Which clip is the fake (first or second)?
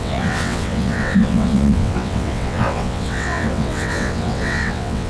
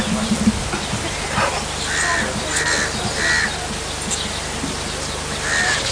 first